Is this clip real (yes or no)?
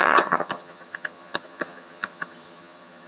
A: no